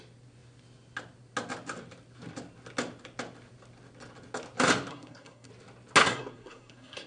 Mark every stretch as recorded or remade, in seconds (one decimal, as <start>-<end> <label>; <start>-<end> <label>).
0.0-4.9 recorded; 4.9-5.5 remade; 5.5-6.0 recorded; 6.0-7.1 remade